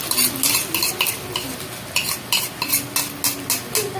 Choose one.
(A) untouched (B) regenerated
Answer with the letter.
A